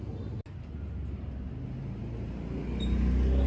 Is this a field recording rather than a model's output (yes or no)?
yes